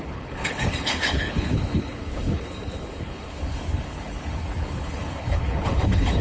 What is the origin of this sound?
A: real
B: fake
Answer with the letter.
B